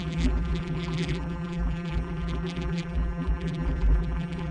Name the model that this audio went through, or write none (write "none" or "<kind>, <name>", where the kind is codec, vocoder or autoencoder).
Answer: vocoder, BigVGAN v2